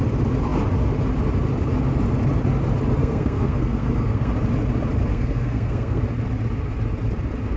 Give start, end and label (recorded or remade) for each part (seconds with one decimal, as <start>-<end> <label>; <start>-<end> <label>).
0.0-3.0 recorded; 3.0-4.3 remade; 4.3-5.1 recorded; 5.1-6.0 remade; 6.0-7.6 recorded